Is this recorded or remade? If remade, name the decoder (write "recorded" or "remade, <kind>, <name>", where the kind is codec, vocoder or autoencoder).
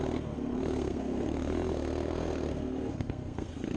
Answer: remade, codec, SNAC